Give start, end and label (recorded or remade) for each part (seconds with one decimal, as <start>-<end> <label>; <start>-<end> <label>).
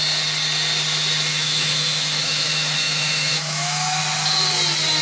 0.0-1.3 recorded; 1.3-4.0 remade; 4.0-5.0 recorded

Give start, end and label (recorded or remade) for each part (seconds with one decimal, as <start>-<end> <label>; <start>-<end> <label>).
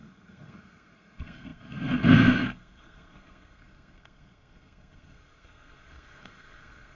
0.0-7.0 remade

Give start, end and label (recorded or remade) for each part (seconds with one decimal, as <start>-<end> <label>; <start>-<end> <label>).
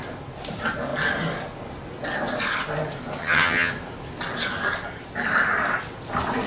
0.0-3.2 recorded; 3.2-3.7 remade; 3.7-6.5 recorded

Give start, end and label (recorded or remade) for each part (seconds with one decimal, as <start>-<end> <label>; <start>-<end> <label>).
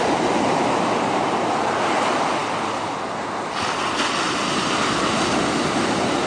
0.0-6.3 recorded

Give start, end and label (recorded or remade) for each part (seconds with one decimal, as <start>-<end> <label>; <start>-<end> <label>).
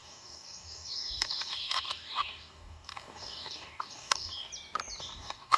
0.0-4.5 remade; 4.5-5.0 recorded; 5.0-5.6 remade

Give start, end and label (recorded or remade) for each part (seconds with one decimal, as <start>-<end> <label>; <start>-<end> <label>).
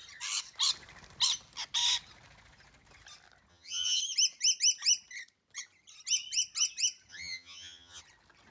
0.0-3.5 recorded; 3.5-4.0 remade; 4.0-7.1 recorded; 7.1-8.0 remade; 8.0-8.5 recorded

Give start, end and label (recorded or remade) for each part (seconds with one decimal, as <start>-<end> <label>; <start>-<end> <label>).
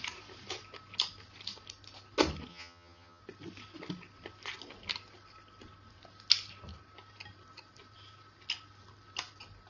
0.0-2.5 recorded; 2.5-3.2 remade; 3.2-9.7 recorded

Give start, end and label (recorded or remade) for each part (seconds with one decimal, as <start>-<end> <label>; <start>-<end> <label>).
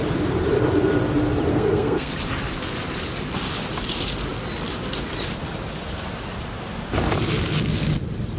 0.0-1.5 recorded; 1.5-2.1 remade; 2.1-8.4 recorded